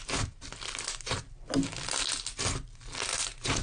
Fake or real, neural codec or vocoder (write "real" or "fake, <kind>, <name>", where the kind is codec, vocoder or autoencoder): real